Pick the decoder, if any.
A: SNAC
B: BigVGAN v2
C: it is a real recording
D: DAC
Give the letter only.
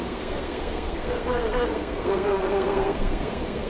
A